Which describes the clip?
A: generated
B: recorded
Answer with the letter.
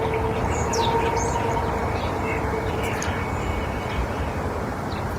B